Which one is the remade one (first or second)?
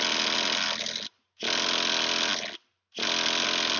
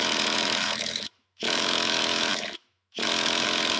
second